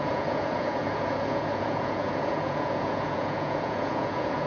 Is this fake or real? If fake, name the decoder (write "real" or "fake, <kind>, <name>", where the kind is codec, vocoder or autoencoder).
fake, vocoder, Vocos